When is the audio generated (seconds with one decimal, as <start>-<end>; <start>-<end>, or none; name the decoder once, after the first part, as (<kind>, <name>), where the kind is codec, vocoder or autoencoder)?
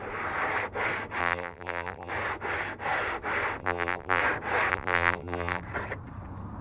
1.2-2.1 (vocoder, BigVGAN v2); 3.6-4.2; 4.7-5.6